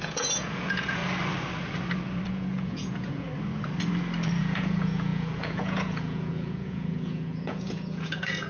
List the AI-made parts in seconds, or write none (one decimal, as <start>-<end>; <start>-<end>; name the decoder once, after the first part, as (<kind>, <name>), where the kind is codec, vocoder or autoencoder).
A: 0.0-1.0 (vocoder, Vocos); 2.3-3.3; 4.4-8.5

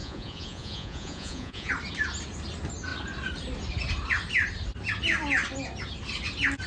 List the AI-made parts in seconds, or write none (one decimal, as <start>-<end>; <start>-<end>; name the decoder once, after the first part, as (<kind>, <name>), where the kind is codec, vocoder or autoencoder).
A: 0.0-1.7 (vocoder, Vocos)

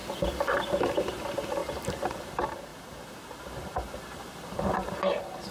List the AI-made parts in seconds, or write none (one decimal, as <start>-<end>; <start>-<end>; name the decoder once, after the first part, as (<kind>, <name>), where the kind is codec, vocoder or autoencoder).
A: 1.6-2.2 (vocoder, BigVGAN v2); 2.7-5.5

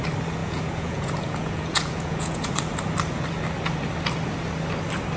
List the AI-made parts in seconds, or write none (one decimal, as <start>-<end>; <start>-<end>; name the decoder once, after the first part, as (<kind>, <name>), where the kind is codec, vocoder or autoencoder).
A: 0.4-2.5 (vocoder, Vocos)